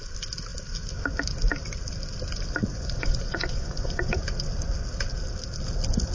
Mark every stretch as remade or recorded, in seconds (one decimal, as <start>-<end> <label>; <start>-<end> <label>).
0.0-2.7 recorded; 2.7-4.2 remade; 4.2-6.1 recorded